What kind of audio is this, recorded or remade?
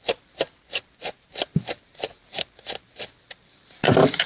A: recorded